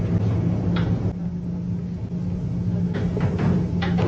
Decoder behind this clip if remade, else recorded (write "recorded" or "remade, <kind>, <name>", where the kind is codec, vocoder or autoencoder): recorded